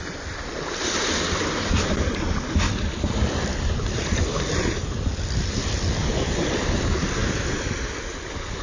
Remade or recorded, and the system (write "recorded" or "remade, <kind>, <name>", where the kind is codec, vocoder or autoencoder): recorded